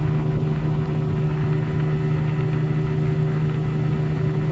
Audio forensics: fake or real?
real